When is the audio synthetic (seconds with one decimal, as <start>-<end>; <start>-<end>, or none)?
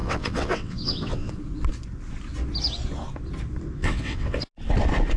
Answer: 0.0-1.3; 3.8-4.4